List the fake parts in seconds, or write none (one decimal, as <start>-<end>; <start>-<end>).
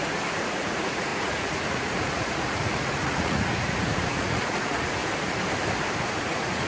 0.0-5.0; 6.0-6.7